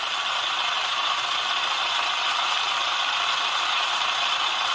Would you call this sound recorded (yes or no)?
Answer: yes